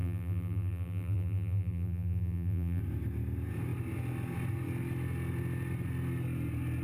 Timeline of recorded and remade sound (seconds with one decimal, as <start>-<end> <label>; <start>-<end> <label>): 0.0-2.8 remade; 2.8-6.8 recorded